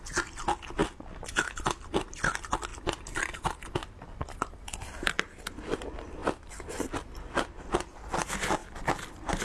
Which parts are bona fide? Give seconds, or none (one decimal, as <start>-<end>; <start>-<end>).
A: none